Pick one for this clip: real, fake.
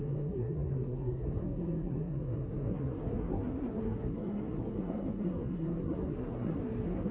fake